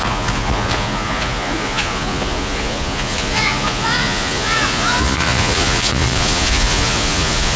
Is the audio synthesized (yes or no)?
yes